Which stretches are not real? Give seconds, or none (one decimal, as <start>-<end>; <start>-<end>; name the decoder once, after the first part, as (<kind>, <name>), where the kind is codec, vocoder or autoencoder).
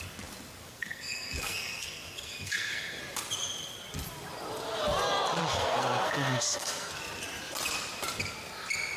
0.6-3.0 (codec, SNAC); 5.4-7.0